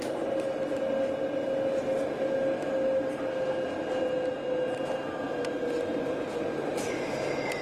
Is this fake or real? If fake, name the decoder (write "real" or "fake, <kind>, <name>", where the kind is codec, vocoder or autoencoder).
real